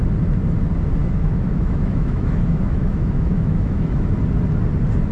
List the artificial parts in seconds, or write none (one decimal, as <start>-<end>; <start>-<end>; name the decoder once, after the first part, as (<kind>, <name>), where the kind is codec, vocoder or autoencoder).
1.0-4.1 (autoencoder, DAC-VAE)